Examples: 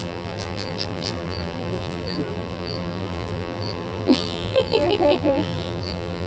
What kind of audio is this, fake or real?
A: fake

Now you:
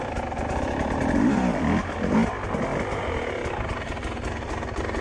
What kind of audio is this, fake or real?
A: real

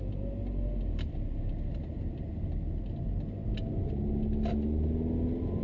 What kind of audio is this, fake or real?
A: real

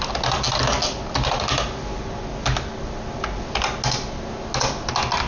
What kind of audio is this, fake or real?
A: real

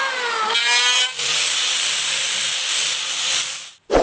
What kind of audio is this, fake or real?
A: real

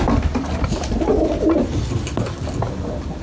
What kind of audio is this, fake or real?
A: real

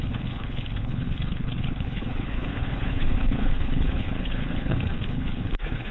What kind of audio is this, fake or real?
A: fake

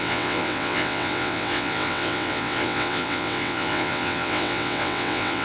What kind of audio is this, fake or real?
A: fake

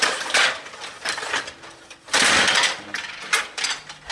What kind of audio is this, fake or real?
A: real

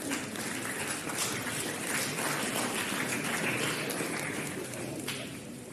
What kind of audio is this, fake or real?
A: fake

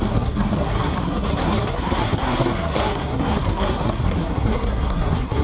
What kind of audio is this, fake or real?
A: fake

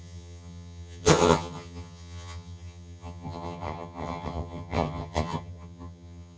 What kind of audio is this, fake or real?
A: fake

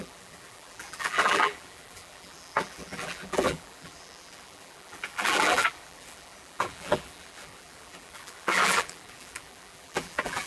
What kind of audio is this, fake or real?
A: fake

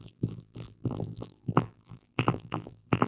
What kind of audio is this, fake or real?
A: fake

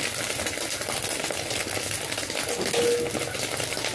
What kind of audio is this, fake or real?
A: real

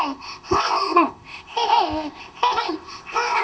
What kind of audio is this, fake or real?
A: fake